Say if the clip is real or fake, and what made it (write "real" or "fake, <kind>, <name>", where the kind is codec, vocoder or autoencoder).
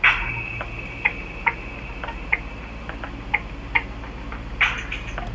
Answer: real